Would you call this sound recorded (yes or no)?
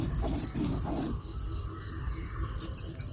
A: yes